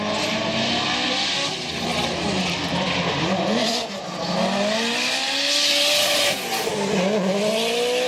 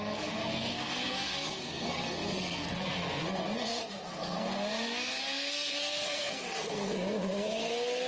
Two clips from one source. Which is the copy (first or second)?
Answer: second